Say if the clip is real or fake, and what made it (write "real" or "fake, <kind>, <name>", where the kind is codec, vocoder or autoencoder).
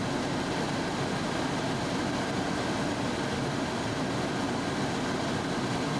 real